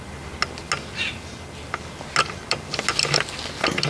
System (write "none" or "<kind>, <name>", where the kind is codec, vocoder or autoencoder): none